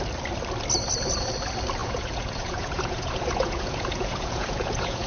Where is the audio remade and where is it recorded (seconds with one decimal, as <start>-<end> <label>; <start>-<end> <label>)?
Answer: 0.0-1.8 recorded; 1.8-5.1 remade